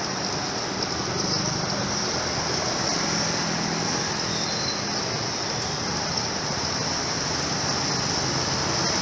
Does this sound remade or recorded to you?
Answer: recorded